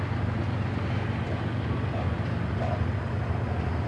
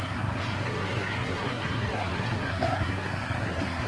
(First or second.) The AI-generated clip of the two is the second